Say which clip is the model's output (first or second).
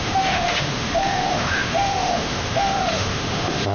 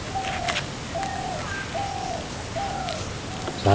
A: first